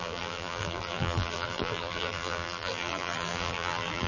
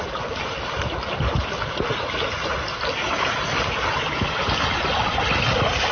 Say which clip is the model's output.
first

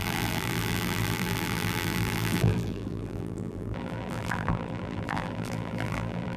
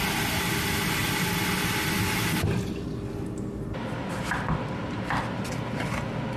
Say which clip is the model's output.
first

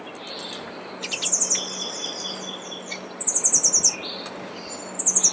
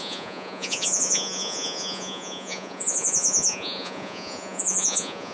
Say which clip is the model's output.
second